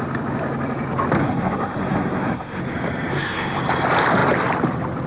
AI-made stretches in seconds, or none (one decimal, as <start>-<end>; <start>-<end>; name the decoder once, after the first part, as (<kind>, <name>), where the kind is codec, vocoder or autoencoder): 1.2-2.6 (codec, SNAC); 3.1-3.6